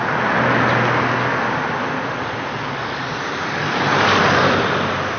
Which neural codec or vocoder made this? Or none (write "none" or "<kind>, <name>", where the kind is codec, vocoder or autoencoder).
none